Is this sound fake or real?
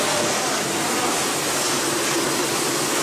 real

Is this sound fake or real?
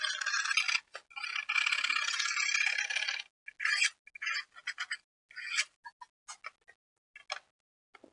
real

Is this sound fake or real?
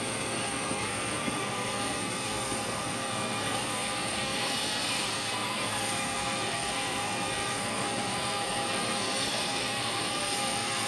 fake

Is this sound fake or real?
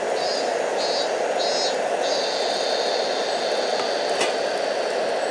real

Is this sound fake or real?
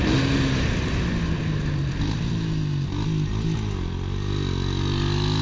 real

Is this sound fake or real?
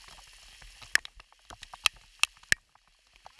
real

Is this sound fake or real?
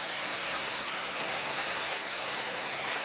fake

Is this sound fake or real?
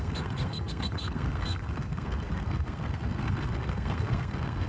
fake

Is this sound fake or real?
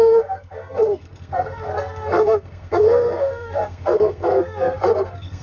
fake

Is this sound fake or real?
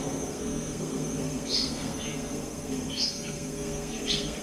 fake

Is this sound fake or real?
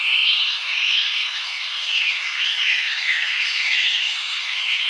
fake